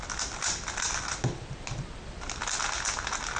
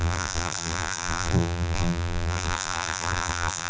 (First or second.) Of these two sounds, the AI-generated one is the second